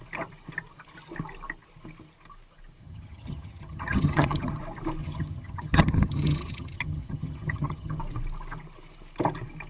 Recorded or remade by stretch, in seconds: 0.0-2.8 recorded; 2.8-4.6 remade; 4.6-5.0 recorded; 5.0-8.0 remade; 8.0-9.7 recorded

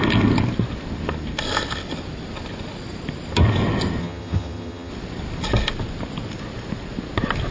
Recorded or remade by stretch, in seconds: 0.0-4.0 recorded; 4.0-4.9 remade; 4.9-7.5 recorded

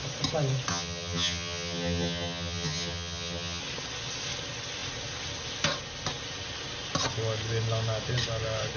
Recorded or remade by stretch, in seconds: 0.0-0.7 recorded; 0.7-3.6 remade; 3.6-8.8 recorded

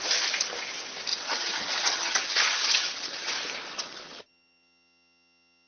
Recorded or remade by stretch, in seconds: 0.0-1.1 recorded; 1.1-3.3 remade; 3.3-3.7 recorded; 3.7-5.7 remade

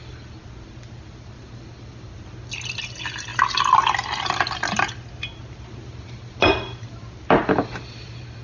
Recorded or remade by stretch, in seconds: 0.0-8.4 recorded